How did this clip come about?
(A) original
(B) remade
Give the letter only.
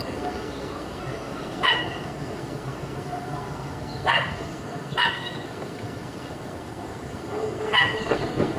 B